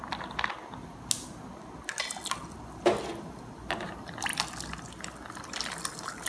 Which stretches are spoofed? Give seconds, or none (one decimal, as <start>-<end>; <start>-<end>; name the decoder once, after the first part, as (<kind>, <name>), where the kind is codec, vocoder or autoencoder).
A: none